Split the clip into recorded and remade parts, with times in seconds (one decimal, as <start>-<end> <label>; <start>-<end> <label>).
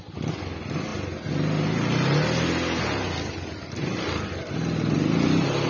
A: 0.0-5.7 recorded